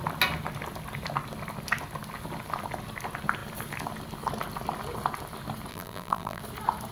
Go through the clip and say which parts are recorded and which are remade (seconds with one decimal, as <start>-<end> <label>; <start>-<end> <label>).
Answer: 0.0-5.7 recorded; 5.7-6.4 remade; 6.4-6.9 recorded